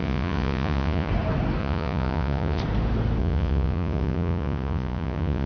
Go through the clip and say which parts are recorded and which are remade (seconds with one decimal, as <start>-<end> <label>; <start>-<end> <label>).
0.0-1.1 remade; 1.1-1.6 recorded; 1.6-2.6 remade; 2.6-3.2 recorded; 3.2-5.5 remade